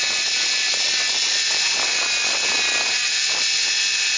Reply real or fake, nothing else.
real